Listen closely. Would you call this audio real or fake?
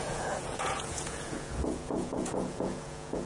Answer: fake